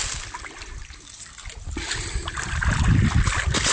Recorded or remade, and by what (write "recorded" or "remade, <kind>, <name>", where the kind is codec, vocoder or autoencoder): recorded